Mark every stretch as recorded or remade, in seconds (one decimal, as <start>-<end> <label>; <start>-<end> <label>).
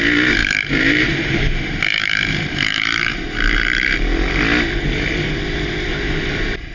0.0-0.4 recorded; 0.4-4.4 remade; 4.4-5.9 recorded; 5.9-6.7 remade